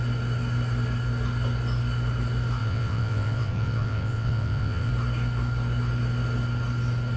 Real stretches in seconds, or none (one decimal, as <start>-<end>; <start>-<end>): 0.0-2.6; 4.9-7.2